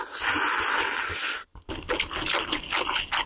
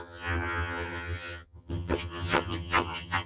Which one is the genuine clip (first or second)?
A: first